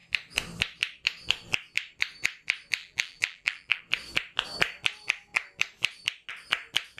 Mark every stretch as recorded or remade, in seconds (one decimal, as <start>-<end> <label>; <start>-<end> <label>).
0.0-2.8 recorded; 2.8-3.8 remade; 3.8-7.0 recorded